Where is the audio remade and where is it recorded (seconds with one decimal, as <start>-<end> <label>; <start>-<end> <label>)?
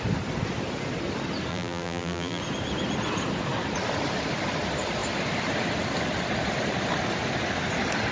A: 0.0-1.5 recorded; 1.5-2.4 remade; 2.4-8.1 recorded